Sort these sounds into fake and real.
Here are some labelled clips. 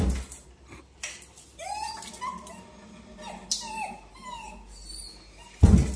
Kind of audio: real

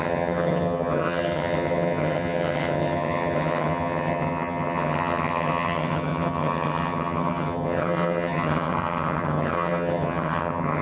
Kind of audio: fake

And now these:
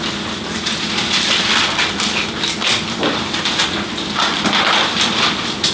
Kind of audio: real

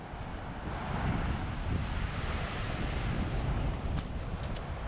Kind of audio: real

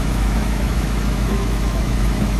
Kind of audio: fake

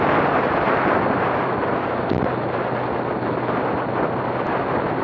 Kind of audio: real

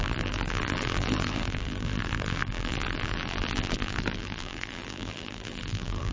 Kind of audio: fake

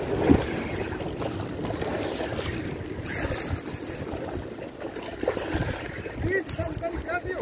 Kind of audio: real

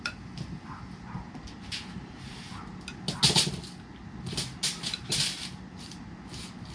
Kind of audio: real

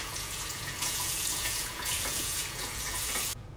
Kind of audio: fake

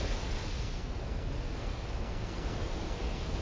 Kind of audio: fake